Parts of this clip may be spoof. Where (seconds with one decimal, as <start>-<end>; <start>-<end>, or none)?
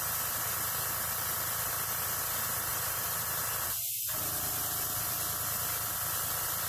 2.7-3.4